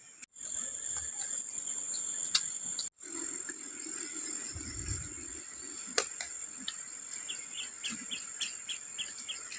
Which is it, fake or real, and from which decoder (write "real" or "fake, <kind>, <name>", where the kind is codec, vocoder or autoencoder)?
real